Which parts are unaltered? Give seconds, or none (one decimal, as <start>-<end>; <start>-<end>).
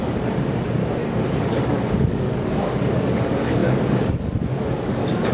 0.8-1.4